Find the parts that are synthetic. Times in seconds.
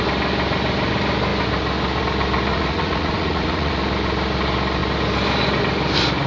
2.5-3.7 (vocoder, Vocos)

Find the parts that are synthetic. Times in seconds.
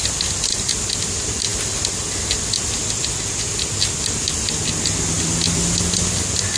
none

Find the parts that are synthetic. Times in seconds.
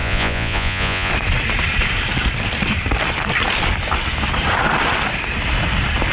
0.0-1.1 (vocoder, Vocos)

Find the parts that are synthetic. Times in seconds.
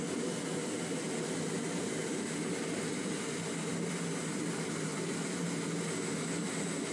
none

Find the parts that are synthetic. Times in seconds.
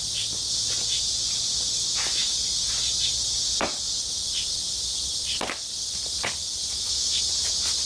6.6-7.2 (autoencoder, DAC-VAE)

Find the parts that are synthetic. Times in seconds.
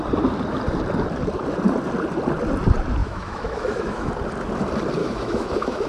3.0-4.1 (autoencoder, DAC-VAE); 5.0-5.9